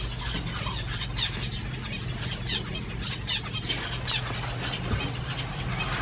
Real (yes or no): yes